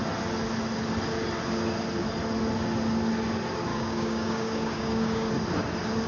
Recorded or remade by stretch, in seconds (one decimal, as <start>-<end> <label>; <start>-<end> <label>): 0.0-3.7 recorded; 3.7-5.3 remade; 5.3-6.1 recorded